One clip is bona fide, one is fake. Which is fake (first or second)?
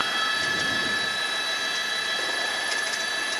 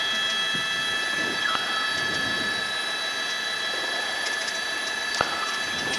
first